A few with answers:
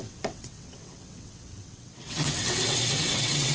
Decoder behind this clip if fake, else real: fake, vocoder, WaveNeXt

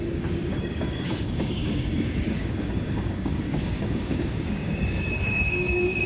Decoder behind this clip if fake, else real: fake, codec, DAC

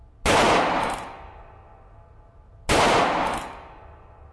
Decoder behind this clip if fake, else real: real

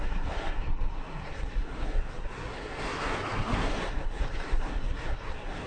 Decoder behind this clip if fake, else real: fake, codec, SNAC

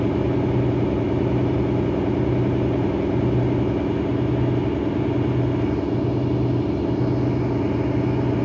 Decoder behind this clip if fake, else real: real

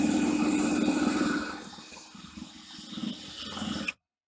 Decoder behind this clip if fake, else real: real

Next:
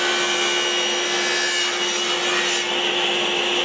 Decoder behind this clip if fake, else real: real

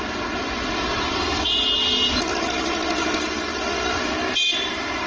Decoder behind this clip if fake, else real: real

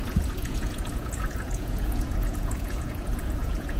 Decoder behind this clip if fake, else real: fake, vocoder, Vocos